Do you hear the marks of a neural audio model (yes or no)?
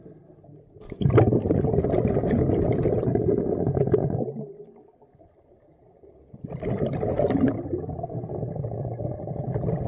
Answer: no